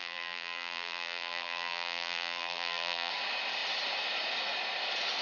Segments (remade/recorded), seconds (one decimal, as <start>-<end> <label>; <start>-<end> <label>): 0.0-3.1 remade; 3.1-5.2 recorded